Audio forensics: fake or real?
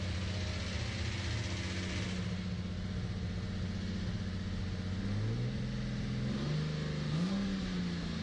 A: real